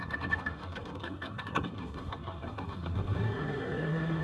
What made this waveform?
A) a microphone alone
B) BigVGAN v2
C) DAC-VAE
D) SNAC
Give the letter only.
D